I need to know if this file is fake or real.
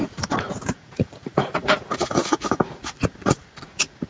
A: fake